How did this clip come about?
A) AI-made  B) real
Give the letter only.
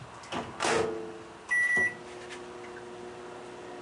B